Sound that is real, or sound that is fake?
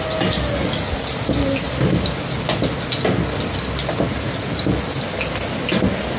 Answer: real